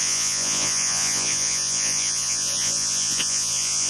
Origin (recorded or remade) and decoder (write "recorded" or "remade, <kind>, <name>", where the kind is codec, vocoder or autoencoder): remade, vocoder, Vocos